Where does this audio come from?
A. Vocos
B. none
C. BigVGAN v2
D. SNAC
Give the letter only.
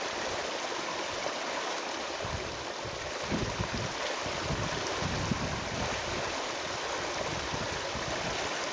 B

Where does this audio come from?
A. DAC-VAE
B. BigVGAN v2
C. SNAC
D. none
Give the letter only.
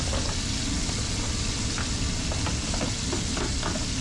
D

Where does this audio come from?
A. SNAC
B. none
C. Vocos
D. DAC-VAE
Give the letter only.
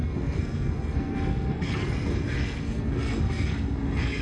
A